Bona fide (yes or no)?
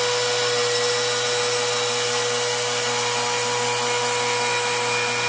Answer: yes